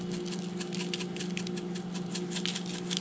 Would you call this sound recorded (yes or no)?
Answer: yes